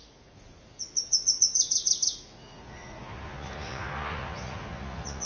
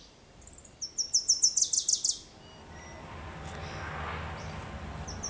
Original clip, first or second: second